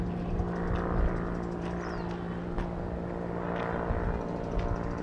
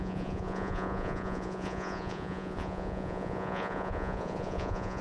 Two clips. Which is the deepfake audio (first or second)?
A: second